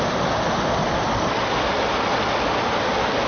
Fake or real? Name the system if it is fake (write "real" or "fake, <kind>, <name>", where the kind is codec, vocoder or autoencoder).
real